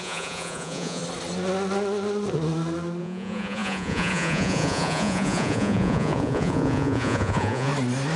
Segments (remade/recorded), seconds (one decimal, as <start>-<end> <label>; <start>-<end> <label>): 0.0-1.0 remade; 1.0-3.0 recorded; 3.0-7.7 remade; 7.7-8.2 recorded